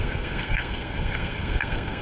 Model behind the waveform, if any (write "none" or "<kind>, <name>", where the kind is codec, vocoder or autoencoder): codec, SNAC